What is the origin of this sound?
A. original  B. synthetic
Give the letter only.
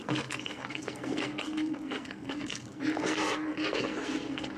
B